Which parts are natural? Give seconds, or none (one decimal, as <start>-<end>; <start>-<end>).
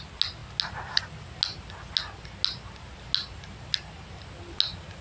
0.0-5.0